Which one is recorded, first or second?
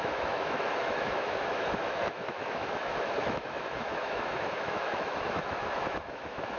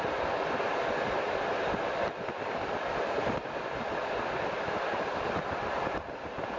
second